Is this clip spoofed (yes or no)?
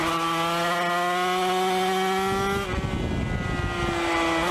no